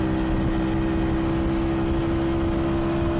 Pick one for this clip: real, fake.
real